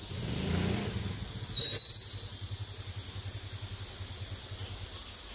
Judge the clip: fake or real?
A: real